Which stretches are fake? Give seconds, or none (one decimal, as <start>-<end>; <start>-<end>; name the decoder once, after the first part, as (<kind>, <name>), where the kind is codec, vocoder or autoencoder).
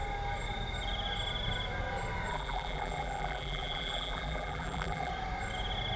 2.3-5.1 (vocoder, BigVGAN v2)